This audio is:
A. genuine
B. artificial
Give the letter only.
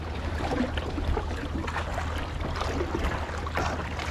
A